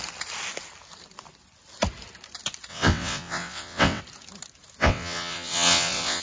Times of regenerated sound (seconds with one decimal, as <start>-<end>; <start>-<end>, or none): 2.7-4.0; 4.8-6.2